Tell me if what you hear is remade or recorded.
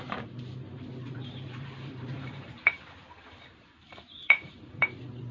remade